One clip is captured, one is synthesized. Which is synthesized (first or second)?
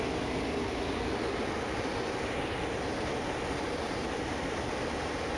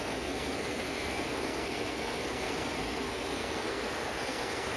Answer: second